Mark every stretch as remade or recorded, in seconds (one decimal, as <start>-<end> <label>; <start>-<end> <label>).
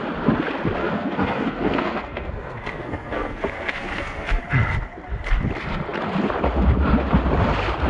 0.0-0.8 recorded; 0.8-4.4 remade; 4.4-7.9 recorded